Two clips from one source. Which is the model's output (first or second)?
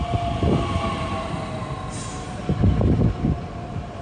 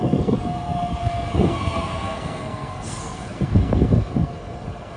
second